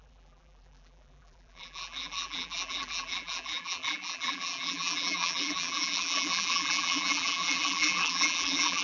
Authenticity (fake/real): fake